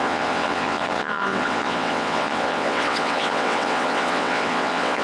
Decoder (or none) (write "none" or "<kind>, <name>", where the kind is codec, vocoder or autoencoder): vocoder, WaveNeXt